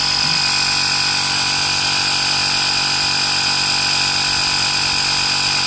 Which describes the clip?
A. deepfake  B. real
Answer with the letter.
B